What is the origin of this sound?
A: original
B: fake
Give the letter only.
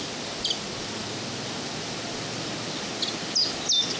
A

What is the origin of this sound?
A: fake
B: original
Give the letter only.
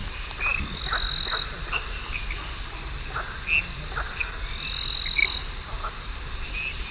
B